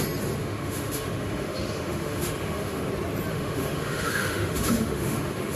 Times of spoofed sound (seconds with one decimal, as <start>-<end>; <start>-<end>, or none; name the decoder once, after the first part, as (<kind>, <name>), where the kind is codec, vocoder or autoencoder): 0.4-2.9 (autoencoder, DAC-VAE); 3.3-5.6

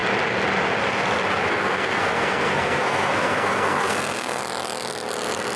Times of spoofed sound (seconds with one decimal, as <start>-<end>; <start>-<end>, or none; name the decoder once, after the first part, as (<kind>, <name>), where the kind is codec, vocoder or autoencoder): 1.5-4.4 (codec, SNAC)

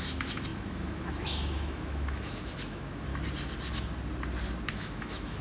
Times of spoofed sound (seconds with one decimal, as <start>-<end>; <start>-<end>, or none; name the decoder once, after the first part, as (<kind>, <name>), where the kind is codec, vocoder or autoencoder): 0.0-3.1 (autoencoder, DAC-VAE); 4.7-5.4

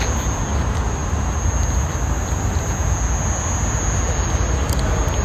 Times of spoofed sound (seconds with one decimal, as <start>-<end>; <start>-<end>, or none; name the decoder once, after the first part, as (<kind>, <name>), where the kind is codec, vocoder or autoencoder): none